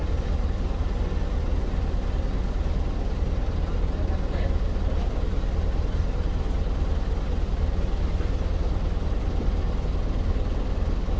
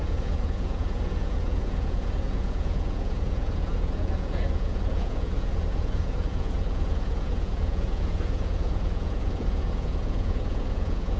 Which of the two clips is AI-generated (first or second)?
second